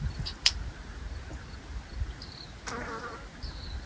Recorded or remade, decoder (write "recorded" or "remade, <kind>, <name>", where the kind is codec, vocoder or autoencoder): recorded